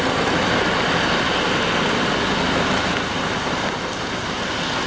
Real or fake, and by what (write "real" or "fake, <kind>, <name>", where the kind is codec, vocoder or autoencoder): real